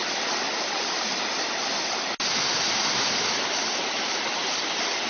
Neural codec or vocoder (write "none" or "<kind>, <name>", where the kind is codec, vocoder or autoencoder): none